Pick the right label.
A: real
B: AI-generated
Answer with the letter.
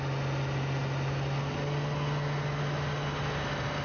A